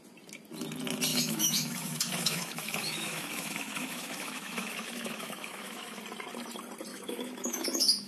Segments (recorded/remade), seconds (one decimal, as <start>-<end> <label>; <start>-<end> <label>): 0.0-1.1 recorded; 1.1-6.0 remade; 6.0-6.9 recorded; 6.9-8.1 remade